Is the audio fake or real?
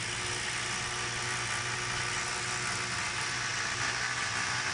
real